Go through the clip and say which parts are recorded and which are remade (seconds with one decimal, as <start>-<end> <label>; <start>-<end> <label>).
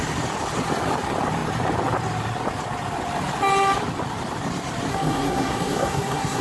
0.0-4.9 recorded; 4.9-6.4 remade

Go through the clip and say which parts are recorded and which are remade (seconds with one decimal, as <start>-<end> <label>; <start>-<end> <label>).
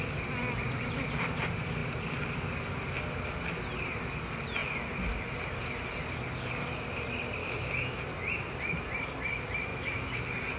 0.0-7.4 recorded; 7.4-8.0 remade; 8.0-9.7 recorded; 9.7-10.2 remade; 10.2-10.6 recorded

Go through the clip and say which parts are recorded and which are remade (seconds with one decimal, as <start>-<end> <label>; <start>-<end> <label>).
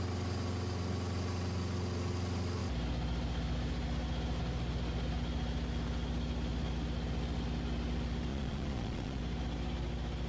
0.0-8.3 recorded; 8.3-9.2 remade; 9.2-10.3 recorded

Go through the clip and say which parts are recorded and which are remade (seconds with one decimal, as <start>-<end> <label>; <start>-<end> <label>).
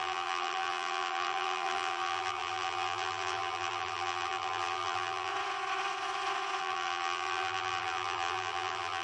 0.0-5.3 remade; 5.3-6.6 recorded; 6.6-9.0 remade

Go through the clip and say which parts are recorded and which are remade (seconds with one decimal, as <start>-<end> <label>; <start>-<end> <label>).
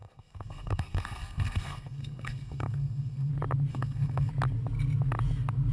0.0-3.3 remade; 3.3-3.7 recorded; 3.7-4.3 remade; 4.3-5.7 recorded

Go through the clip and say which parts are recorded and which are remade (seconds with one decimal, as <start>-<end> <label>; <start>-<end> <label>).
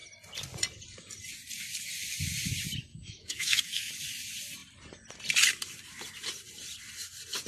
0.0-2.9 recorded; 2.9-3.9 remade; 3.9-7.5 recorded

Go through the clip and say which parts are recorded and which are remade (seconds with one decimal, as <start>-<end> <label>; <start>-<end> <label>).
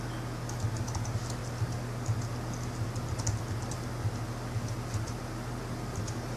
0.0-6.4 recorded